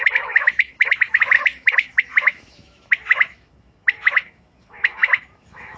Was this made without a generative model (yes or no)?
no